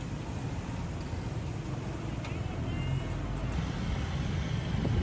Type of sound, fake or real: real